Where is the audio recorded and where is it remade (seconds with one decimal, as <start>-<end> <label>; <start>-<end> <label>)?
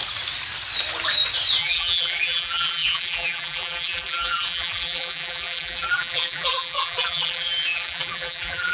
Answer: 0.0-1.6 recorded; 1.6-8.7 remade